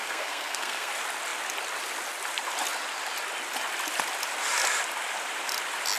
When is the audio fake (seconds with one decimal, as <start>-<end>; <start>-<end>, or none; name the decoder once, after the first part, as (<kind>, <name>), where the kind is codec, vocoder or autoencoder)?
0.0-0.9 (codec, SNAC)